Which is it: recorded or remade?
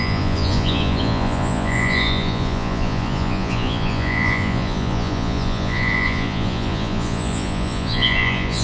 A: remade